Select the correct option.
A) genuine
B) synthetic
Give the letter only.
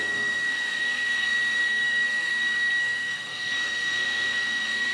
B